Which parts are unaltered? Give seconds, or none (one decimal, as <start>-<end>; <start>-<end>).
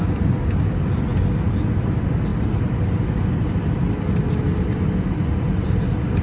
0.0-6.2